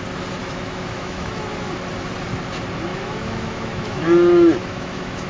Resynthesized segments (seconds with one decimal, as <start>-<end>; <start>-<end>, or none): 0.4-1.7; 2.9-5.3